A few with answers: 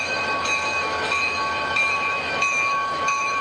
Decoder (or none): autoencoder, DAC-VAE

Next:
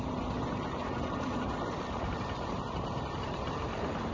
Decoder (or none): vocoder, BigVGAN v2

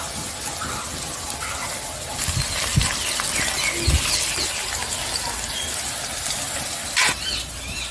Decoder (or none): none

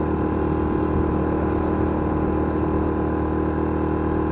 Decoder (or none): none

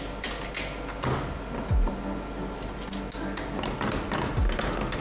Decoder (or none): none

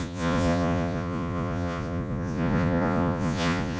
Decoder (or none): vocoder, Vocos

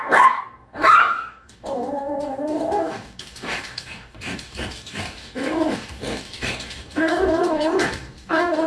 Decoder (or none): codec, DAC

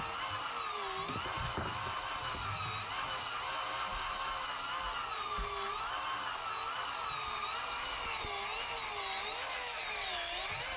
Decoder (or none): none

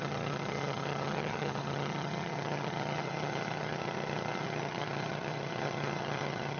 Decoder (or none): vocoder, HiFi-GAN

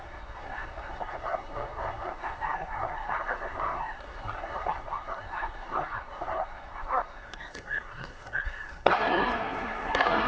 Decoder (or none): codec, SNAC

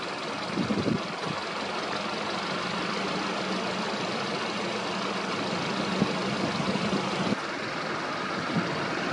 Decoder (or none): none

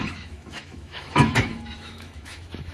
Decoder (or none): autoencoder, DAC-VAE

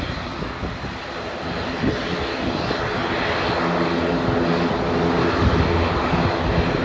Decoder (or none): none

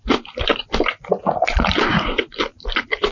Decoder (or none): vocoder, BigVGAN v2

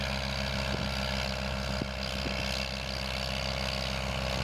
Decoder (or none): none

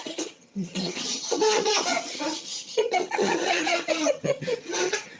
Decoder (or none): vocoder, HiFi-GAN